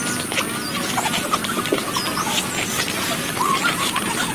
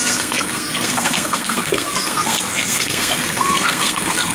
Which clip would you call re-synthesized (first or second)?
second